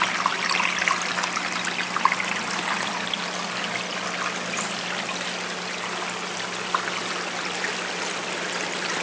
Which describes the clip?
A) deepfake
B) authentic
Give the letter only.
B